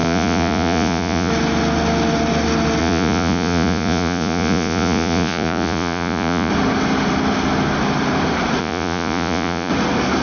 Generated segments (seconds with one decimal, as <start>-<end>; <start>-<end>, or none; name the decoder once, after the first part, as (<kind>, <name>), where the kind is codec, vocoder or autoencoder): 0.0-1.3 (vocoder, Vocos); 2.8-6.5; 8.6-9.7